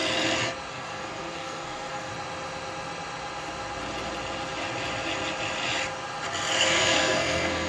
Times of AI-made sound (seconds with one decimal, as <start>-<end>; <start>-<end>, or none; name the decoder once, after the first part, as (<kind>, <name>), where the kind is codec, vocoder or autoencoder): 0.7-2.1 (codec, SNAC); 6.6-7.7